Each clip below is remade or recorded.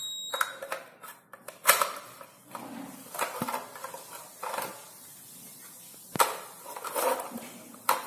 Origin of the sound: recorded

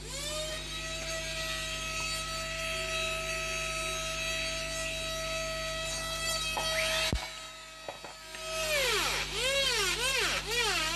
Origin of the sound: recorded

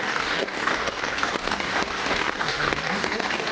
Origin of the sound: remade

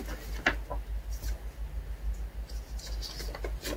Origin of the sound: recorded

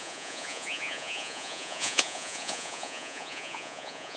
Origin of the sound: remade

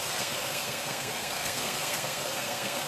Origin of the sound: remade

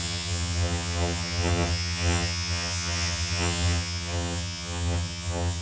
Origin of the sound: remade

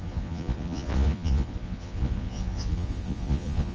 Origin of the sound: remade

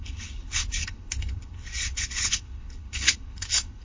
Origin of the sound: remade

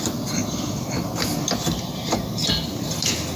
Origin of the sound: recorded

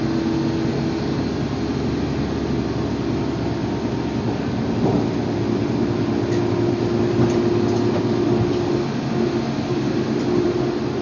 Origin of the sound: recorded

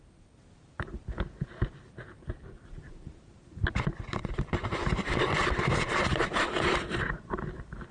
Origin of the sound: remade